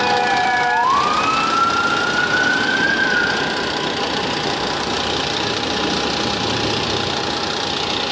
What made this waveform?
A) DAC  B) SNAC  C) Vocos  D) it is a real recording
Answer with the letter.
D